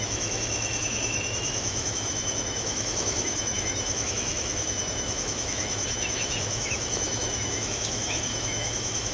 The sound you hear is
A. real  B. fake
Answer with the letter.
B